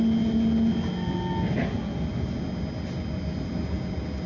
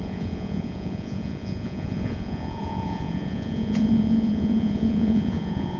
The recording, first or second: first